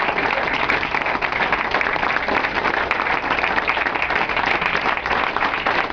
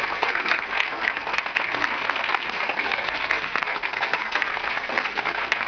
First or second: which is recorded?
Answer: first